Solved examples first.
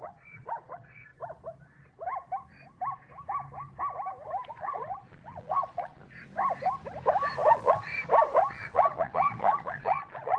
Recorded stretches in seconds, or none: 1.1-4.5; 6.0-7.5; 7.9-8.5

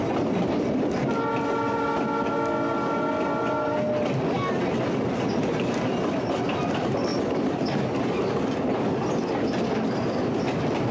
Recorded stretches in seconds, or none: 0.0-10.9

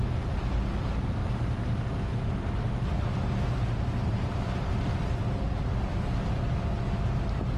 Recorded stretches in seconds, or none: 0.0-7.6

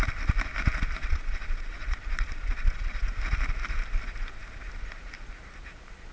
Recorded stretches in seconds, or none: 0.0-1.0; 3.1-6.1

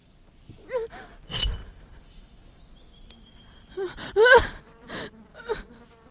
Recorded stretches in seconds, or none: 0.0-6.1

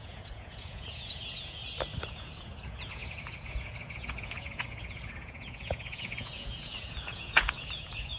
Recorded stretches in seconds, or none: 1.6-2.1